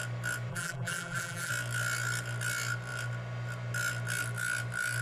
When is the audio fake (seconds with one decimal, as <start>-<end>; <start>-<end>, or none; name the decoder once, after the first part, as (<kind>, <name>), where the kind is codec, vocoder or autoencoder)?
0.5-1.5 (vocoder, BigVGAN v2)